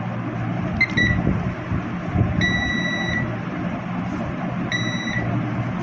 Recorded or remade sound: recorded